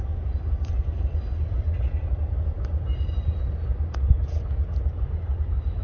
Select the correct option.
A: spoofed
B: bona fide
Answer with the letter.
B